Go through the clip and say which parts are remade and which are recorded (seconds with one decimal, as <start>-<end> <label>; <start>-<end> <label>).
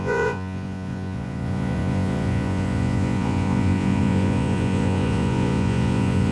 0.0-6.3 remade